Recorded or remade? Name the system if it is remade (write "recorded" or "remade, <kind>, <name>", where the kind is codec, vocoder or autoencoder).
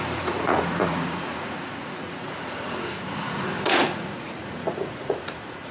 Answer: remade, vocoder, Vocos